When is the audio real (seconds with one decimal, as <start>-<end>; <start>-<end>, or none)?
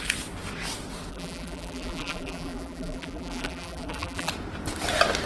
0.0-1.1; 4.3-5.3